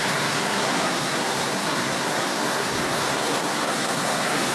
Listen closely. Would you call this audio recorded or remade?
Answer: remade